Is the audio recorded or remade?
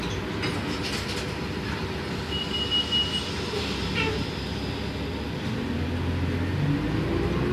recorded